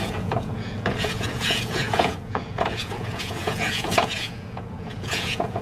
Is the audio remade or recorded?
remade